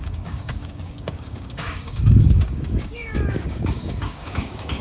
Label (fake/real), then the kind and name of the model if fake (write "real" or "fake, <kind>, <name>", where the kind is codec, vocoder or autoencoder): fake, codec, DAC